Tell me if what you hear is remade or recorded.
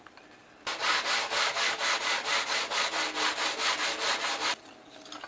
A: recorded